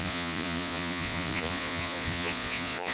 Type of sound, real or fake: fake